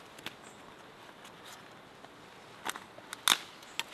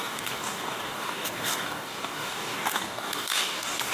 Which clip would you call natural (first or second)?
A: first